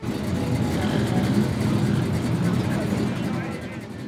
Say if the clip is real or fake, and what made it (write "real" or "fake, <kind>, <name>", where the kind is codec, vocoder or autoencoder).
real